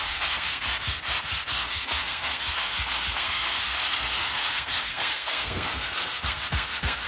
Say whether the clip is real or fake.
fake